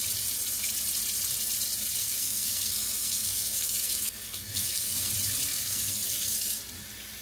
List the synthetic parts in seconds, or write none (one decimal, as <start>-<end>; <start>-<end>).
2.0-5.1; 5.5-6.6